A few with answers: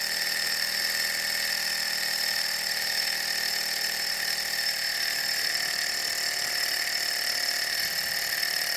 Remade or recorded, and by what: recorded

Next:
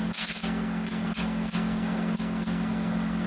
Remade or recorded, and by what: remade, codec, SNAC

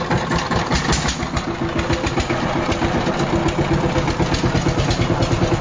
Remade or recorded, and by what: recorded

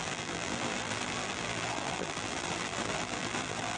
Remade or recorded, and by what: remade, vocoder, BigVGAN v2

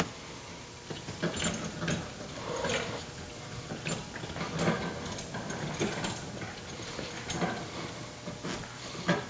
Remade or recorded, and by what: recorded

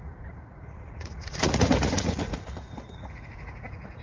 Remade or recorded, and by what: remade, vocoder, Vocos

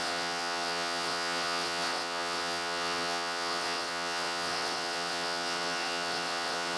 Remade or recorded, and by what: remade, vocoder, WaveNeXt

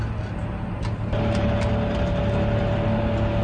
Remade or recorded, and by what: recorded